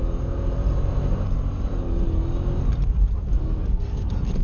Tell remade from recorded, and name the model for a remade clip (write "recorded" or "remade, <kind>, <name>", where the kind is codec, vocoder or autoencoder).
recorded